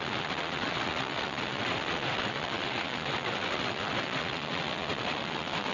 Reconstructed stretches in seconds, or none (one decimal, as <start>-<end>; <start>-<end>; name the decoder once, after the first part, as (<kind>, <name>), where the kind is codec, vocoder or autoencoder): 0.0-5.7 (vocoder, WaveNeXt)